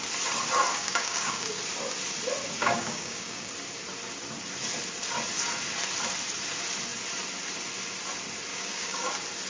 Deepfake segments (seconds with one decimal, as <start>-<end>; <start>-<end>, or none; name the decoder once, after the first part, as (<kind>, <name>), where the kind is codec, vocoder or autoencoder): 0.7-1.6 (codec, DAC); 2.6-3.5; 8.5-9.1